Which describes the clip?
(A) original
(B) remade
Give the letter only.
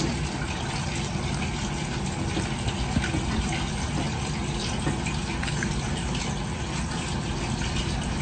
A